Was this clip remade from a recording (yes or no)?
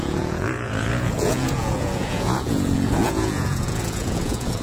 yes